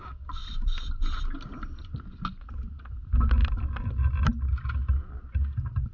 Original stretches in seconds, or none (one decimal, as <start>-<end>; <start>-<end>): 0.0-5.9